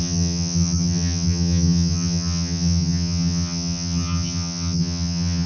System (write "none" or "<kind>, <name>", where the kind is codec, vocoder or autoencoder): vocoder, HiFi-GAN